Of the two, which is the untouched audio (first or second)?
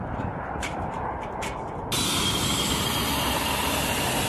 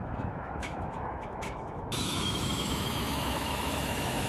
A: first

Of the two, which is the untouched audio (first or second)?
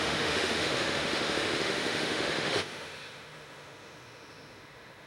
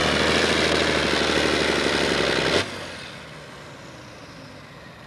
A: second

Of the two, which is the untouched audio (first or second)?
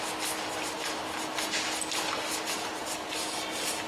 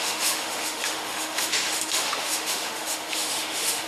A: first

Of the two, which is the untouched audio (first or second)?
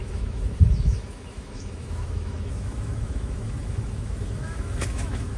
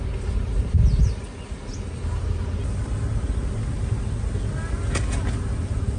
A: second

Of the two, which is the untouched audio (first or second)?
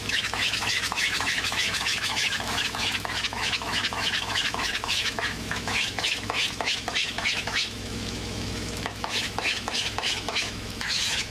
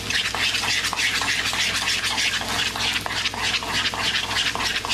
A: second